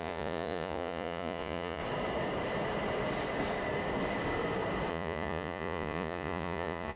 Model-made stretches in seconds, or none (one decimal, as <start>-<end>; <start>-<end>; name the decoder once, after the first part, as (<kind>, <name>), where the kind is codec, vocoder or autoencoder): 0.0-1.8 (vocoder, Vocos); 4.9-7.0